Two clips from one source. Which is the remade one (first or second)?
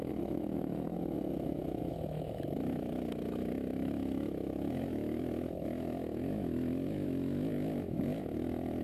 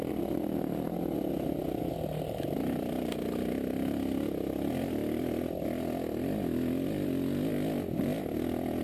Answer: first